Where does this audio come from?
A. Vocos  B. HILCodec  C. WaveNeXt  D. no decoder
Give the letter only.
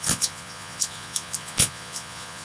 A